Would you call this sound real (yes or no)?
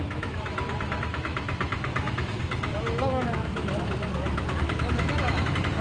no